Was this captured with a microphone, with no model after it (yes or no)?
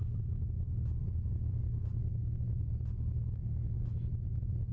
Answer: yes